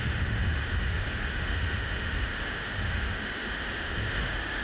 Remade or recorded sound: remade